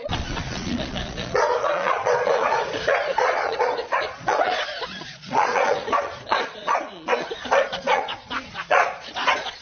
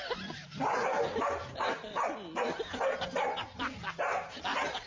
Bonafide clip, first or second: second